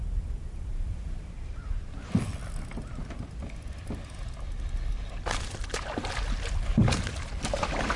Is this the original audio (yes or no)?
yes